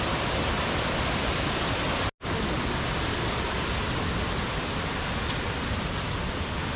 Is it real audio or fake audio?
real